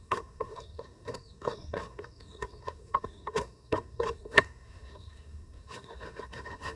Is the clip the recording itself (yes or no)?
no